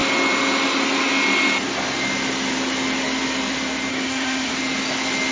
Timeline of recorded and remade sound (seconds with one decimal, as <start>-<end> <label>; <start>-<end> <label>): 0.0-3.9 recorded; 3.9-4.5 remade; 4.5-5.3 recorded